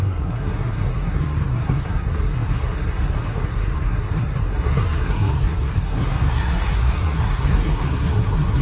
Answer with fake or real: fake